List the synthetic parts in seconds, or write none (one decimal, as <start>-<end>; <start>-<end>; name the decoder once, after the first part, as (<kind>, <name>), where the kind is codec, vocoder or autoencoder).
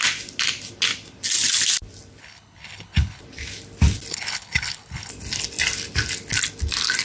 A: 2.2-3.2 (codec, HILCodec); 4.1-5.1